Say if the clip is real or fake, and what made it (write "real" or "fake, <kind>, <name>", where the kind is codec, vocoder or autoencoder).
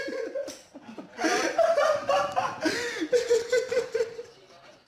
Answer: fake, vocoder, BigVGAN v2